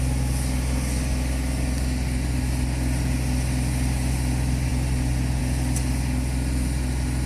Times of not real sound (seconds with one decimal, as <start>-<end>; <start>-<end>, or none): none